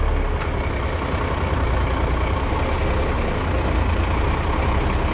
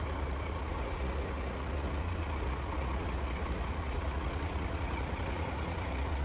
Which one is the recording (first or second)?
first